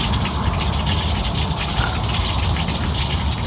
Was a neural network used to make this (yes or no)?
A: no